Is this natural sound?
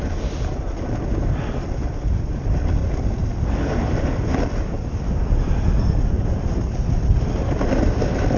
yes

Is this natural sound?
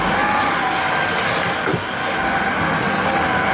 yes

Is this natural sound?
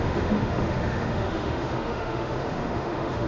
no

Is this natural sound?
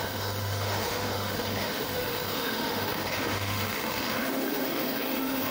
no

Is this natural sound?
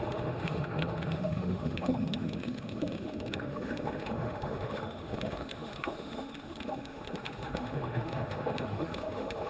no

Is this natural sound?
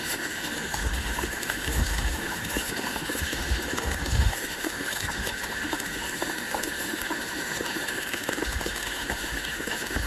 no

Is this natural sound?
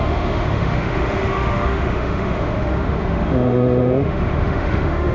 no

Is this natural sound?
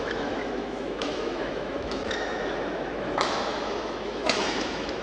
no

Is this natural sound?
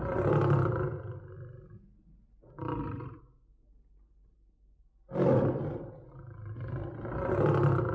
yes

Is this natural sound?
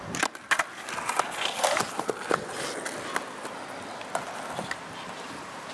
yes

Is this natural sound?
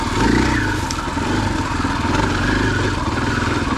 yes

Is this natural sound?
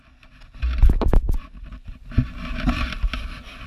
yes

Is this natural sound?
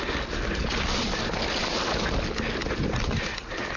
yes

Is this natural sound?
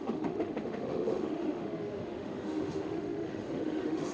no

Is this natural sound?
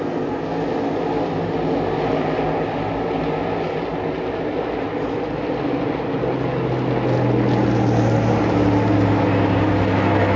yes